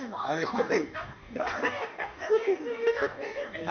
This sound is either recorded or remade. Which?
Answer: remade